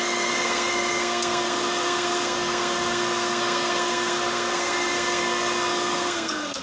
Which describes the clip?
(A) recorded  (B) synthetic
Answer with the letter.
B